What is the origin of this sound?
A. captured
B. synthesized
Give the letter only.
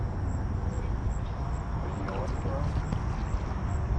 A